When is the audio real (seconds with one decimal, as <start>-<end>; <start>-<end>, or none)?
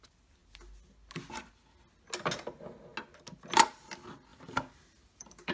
0.0-4.3